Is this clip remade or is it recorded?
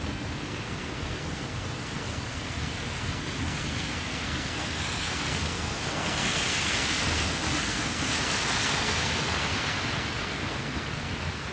remade